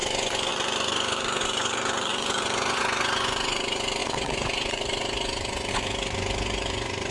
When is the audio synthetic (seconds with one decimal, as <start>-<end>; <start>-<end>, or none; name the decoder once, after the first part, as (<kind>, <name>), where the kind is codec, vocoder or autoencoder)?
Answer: 0.0-7.1 (vocoder, Vocos)